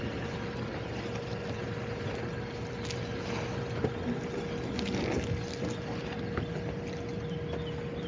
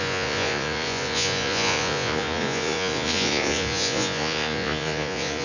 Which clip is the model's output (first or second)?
second